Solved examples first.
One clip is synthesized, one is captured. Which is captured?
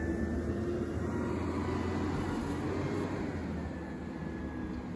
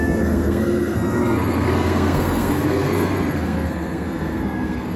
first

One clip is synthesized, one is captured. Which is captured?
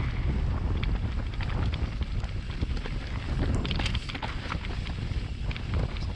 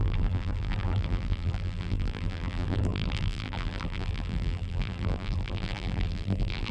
first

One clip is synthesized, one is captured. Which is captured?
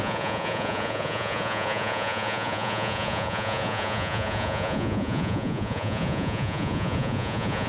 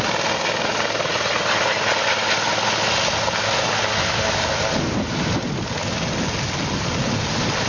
second